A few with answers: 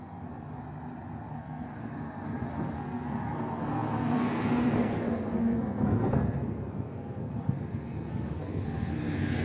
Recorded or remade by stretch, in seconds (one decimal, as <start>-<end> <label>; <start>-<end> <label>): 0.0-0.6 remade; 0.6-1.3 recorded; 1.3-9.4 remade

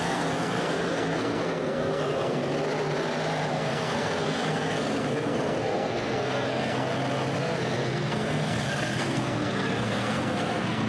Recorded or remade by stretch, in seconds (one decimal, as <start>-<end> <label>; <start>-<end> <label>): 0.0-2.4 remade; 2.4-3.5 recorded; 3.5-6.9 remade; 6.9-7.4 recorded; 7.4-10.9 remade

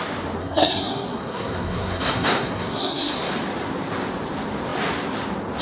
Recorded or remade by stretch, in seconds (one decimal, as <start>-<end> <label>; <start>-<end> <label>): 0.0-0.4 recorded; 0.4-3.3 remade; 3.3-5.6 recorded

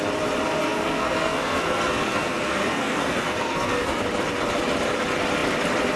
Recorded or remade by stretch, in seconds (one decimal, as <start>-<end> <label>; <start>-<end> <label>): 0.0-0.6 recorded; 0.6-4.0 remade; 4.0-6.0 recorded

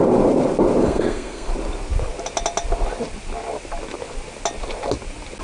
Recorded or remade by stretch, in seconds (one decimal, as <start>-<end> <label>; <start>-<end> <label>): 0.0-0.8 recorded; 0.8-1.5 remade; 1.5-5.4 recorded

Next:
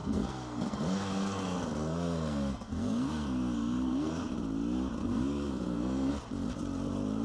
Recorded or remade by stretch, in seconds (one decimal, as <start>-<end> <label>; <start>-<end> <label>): 0.0-4.3 remade; 4.3-5.0 recorded; 5.0-6.1 remade; 6.1-7.2 recorded

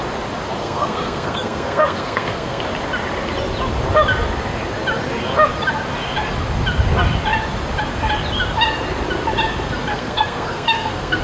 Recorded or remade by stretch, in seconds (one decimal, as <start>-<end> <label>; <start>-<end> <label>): 0.0-0.6 recorded; 0.6-2.6 remade; 2.6-9.9 recorded; 9.9-11.2 remade

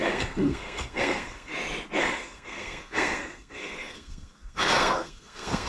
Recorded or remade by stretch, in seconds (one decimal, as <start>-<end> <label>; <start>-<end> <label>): 0.0-1.5 remade; 1.5-2.0 recorded; 2.0-5.7 remade